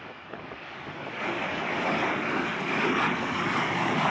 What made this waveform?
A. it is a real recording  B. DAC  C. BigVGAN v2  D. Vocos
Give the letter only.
B